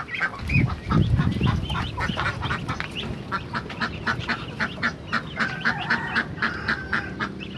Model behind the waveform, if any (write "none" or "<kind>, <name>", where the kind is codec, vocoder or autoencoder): none